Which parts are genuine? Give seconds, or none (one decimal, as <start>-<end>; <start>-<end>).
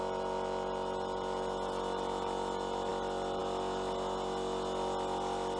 0.0-5.6